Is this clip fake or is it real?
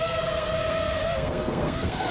fake